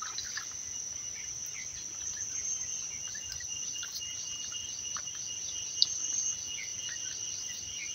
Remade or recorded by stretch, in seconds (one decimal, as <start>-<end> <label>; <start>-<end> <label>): 0.0-6.7 recorded; 6.7-7.3 remade; 7.3-7.9 recorded